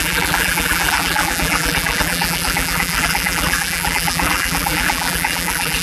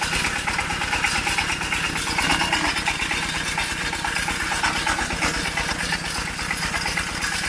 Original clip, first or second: second